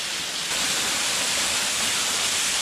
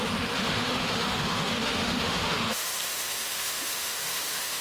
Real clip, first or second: first